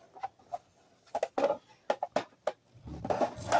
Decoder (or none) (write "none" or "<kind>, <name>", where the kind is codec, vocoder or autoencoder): none